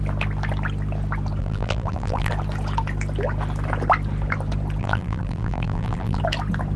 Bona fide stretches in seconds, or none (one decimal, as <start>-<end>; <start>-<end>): 0.0-1.4; 2.3-4.8; 6.2-6.8